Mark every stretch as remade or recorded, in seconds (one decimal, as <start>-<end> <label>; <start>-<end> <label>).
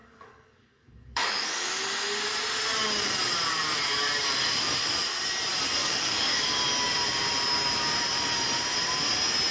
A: 0.0-1.7 remade; 1.7-5.8 recorded; 5.8-6.4 remade; 6.4-9.5 recorded